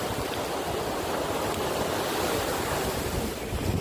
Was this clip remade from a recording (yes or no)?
no